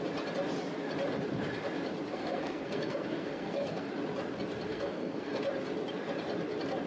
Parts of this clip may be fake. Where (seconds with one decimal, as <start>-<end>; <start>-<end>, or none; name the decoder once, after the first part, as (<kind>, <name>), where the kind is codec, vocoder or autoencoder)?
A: 2.1-3.9 (codec, SNAC); 4.7-5.4